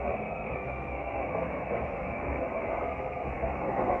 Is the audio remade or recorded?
remade